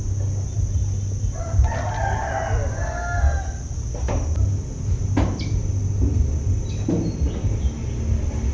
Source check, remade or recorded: recorded